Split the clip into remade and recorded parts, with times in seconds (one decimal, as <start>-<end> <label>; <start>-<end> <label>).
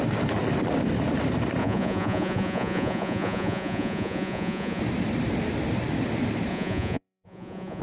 0.0-1.6 recorded; 1.6-4.8 remade; 4.8-6.5 recorded; 6.5-7.8 remade